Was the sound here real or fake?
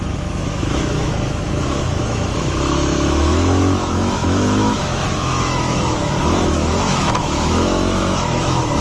fake